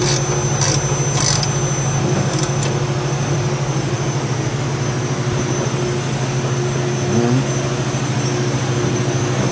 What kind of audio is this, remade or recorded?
recorded